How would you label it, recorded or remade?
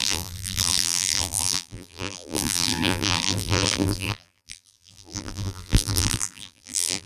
remade